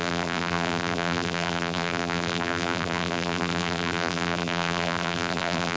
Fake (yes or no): yes